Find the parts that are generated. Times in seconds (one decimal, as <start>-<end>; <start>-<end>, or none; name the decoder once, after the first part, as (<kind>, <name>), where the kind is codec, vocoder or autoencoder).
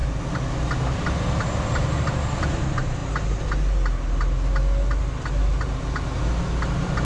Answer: none